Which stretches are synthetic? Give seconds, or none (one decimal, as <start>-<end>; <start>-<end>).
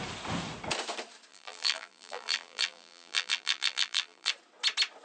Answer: 1.3-4.3